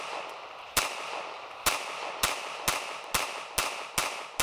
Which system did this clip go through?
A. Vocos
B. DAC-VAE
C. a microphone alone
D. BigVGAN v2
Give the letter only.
C